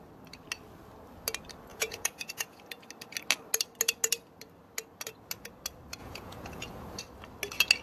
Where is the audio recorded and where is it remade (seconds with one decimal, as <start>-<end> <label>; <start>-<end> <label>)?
0.0-1.7 recorded; 1.7-2.6 remade; 2.6-6.0 recorded; 6.0-7.0 remade; 7.0-7.8 recorded